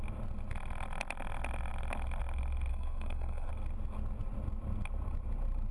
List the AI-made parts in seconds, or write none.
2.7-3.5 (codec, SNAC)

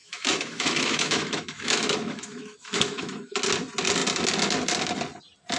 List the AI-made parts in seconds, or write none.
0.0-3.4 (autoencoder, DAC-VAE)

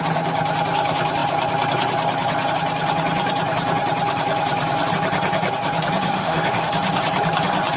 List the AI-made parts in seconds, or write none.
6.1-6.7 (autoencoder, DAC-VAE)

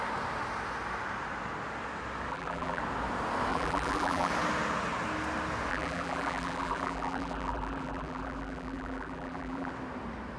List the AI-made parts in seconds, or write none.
2.3-2.8 (vocoder, BigVGAN v2); 3.5-4.3; 5.7-9.7

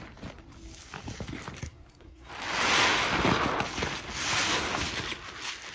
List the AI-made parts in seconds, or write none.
1.6-2.3 (codec, SNAC)

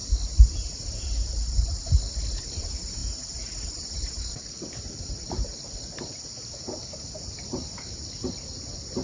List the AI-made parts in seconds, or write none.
none